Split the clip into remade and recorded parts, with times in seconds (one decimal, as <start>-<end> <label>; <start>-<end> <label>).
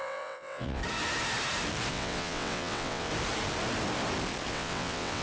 0.0-0.8 remade; 0.8-1.9 recorded; 1.9-3.1 remade; 3.1-4.5 recorded; 4.5-5.2 remade